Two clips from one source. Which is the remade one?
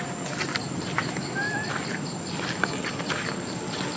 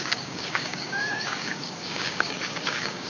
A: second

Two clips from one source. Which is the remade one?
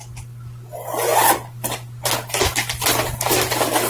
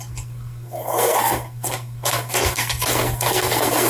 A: second